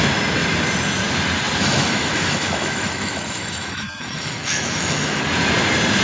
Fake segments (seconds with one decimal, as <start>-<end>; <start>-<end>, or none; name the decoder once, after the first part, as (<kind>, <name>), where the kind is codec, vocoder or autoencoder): 1.6-5.2 (autoencoder, DAC-VAE)